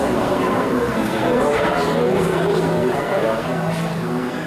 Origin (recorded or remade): remade